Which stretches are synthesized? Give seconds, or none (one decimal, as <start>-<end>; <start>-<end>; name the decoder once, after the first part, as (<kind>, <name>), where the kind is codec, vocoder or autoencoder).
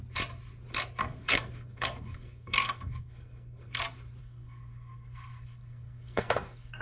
1.0-3.8 (codec, SNAC); 4.2-6.8